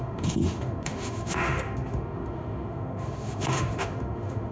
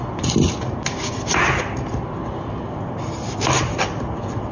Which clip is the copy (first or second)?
first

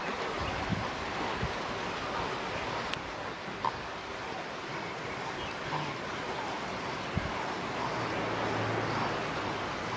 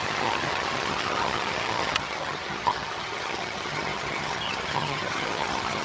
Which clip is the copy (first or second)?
second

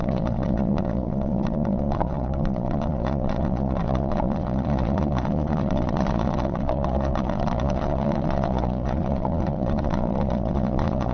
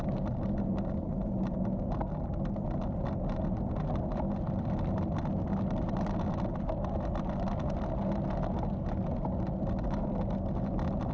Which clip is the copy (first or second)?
first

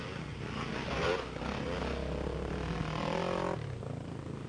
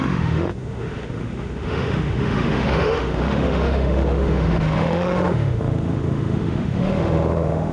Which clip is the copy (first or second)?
second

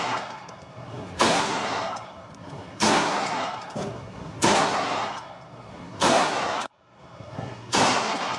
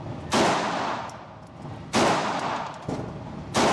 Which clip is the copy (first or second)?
first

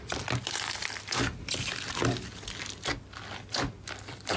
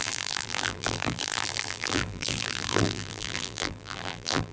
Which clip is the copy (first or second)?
second